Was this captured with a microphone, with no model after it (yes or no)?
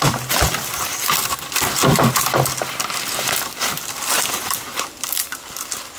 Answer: yes